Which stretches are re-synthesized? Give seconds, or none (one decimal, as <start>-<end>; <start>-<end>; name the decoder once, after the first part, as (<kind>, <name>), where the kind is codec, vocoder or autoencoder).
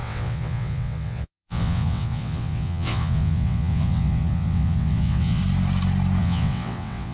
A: 0.0-5.4 (vocoder, WaveNeXt); 6.2-7.1